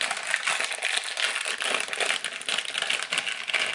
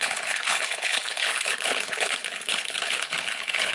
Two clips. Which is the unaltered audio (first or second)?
first